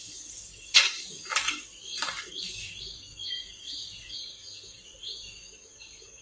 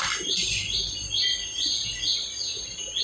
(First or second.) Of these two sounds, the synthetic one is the first